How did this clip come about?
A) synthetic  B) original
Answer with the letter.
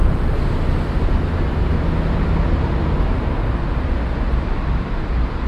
B